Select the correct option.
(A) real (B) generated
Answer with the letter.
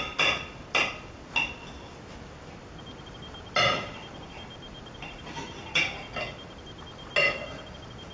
A